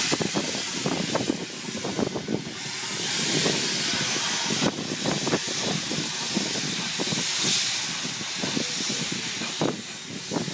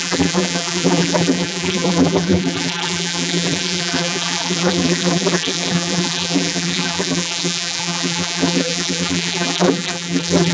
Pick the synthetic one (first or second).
second